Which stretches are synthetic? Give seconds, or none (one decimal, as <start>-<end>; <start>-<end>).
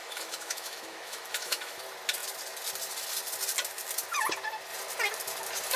0.0-1.8